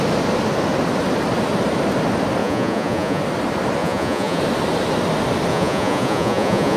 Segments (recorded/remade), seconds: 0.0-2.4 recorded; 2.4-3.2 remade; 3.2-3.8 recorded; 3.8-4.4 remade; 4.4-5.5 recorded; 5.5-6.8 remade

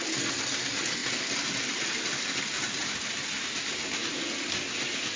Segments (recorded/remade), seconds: 0.0-5.2 recorded

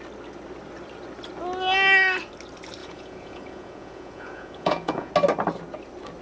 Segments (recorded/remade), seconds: 0.0-2.8 recorded; 2.8-5.1 remade; 5.1-6.2 recorded

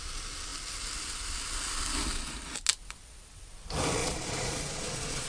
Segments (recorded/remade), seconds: 0.0-4.0 recorded; 4.0-5.3 remade

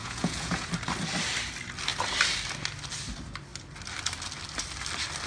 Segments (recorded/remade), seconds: 0.0-0.7 remade; 0.7-5.3 recorded

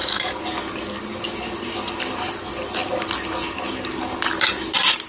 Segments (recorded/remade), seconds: 0.0-5.1 recorded

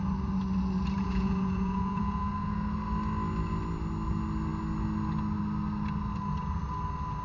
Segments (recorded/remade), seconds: 0.0-1.0 recorded; 1.0-2.3 remade; 2.3-7.2 recorded